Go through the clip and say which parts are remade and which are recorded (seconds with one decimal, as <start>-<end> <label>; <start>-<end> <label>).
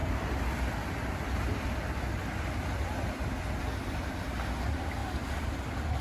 0.0-3.6 remade; 3.6-6.0 recorded